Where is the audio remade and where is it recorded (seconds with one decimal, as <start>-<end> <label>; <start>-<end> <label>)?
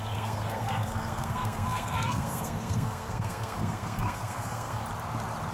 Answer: 0.0-4.8 remade; 4.8-5.5 recorded